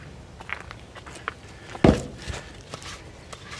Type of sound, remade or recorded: recorded